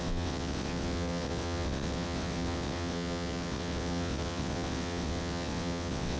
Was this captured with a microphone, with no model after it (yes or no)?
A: no